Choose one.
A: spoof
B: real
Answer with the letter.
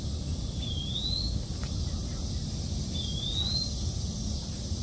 B